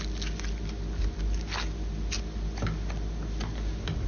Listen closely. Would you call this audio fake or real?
real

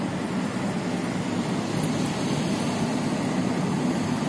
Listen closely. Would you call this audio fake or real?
real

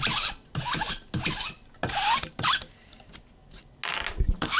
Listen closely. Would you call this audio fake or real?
real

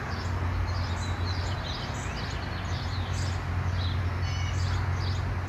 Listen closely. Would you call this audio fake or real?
real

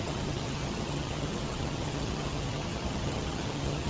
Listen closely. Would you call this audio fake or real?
fake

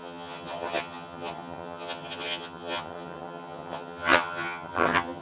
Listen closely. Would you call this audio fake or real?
fake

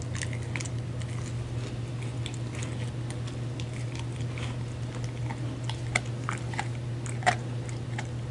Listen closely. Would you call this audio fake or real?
real